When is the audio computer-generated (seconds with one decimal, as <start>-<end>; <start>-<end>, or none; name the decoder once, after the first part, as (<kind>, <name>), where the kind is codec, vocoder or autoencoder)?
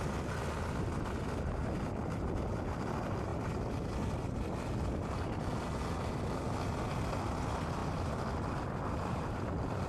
none